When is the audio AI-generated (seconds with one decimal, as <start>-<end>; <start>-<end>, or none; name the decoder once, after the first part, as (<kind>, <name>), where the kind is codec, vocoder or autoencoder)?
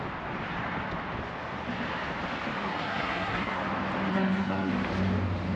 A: 2.7-3.6 (codec, SNAC); 4.1-4.7